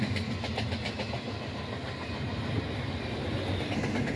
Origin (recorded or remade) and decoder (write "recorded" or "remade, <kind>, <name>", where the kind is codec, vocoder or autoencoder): recorded